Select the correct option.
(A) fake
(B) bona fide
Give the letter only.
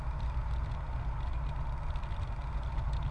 B